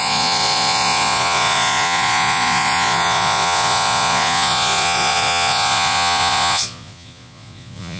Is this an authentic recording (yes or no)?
no